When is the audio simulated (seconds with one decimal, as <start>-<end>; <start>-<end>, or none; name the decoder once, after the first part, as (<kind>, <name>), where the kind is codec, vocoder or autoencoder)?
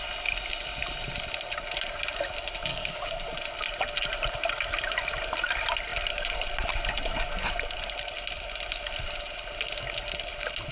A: 2.7-3.3 (codec, DAC)